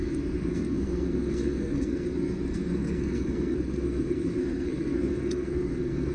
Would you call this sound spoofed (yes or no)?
yes